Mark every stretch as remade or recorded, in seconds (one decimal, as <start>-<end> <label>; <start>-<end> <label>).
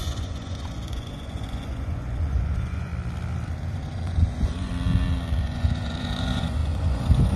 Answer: 0.0-2.9 remade; 2.9-3.7 recorded; 3.7-4.7 remade; 4.7-5.4 recorded; 5.4-7.4 remade